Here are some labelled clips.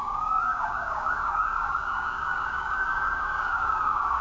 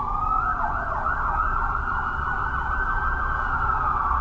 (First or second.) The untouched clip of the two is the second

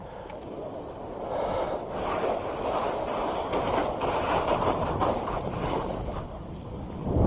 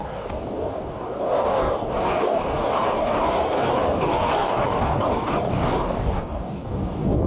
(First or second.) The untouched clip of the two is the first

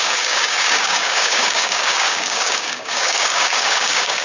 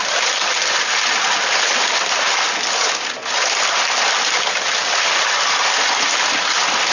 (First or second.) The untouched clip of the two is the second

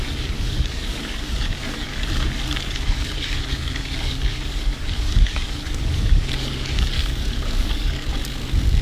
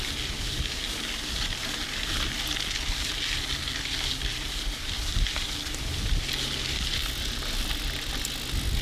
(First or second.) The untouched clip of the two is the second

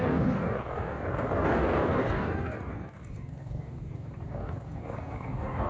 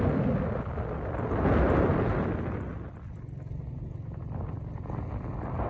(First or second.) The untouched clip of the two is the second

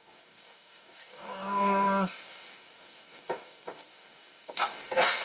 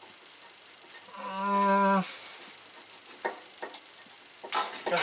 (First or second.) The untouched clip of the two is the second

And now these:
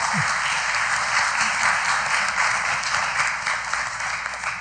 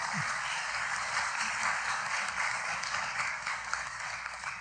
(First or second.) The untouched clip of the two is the first